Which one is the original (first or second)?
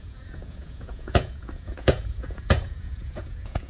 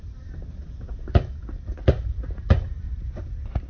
second